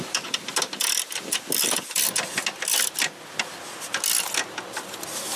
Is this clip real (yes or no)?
yes